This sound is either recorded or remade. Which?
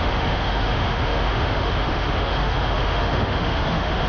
remade